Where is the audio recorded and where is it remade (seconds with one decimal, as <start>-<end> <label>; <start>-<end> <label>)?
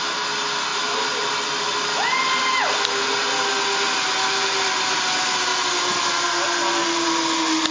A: 0.0-7.7 recorded